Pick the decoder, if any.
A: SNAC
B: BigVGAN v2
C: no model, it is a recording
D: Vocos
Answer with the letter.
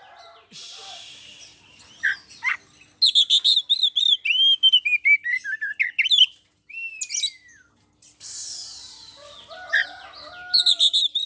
C